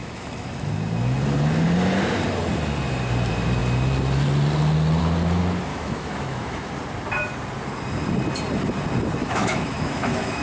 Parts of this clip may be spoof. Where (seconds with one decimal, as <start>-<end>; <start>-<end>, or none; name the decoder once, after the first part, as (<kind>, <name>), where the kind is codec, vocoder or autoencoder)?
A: 0.0-0.7 (autoencoder, DAC-VAE); 5.7-6.7; 9.2-10.4